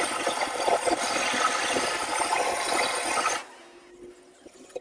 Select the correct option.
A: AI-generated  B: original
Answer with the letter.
B